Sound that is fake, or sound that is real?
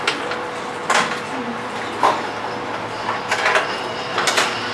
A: real